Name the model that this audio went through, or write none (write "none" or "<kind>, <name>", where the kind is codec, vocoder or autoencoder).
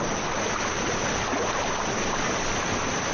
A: none